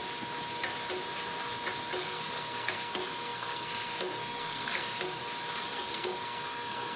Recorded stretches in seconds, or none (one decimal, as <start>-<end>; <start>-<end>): 0.0-2.0; 5.2-5.7